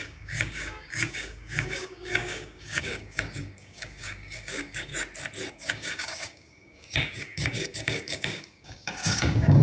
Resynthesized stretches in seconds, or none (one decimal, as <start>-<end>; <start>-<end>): 0.0-4.9; 5.5-9.6

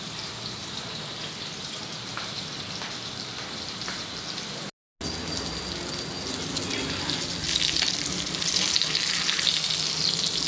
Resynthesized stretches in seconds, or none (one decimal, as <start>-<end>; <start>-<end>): 0.6-4.1

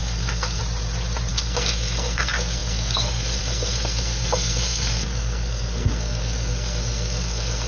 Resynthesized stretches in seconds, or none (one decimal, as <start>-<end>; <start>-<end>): 0.0-0.6; 1.3-7.7

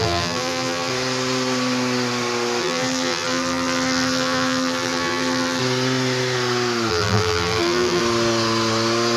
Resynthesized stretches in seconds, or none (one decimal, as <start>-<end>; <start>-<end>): 0.0-0.9; 2.6-5.6; 6.9-8.0